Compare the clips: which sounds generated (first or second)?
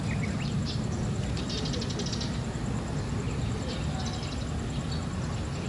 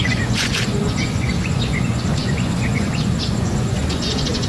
second